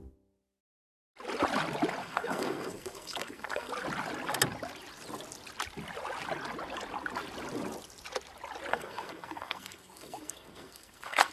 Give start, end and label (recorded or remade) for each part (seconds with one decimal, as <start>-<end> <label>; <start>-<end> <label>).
0.0-2.0 recorded; 2.0-3.7 remade; 3.7-8.7 recorded; 8.7-11.3 remade